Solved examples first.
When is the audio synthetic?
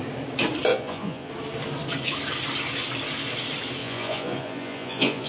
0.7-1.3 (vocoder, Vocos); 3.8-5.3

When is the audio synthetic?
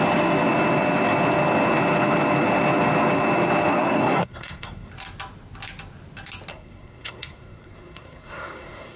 3.7-4.9 (codec, SNAC); 6.5-9.0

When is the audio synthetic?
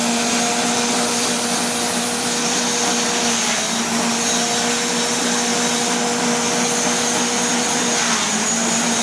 none